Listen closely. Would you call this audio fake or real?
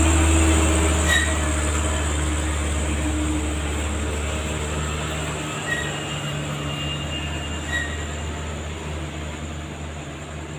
real